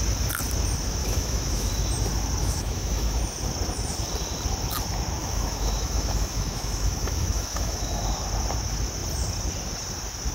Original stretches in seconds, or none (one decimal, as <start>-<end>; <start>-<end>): 0.0-1.0; 1.7-2.4; 3.2-5.2; 8.0-10.3